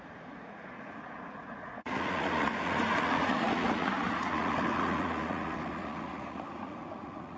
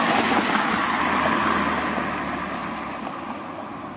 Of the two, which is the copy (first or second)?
first